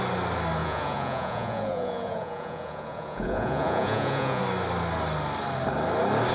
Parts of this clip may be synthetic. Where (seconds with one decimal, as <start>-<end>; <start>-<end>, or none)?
0.6-4.4